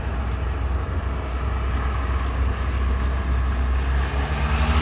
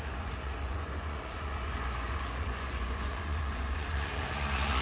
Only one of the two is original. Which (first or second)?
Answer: first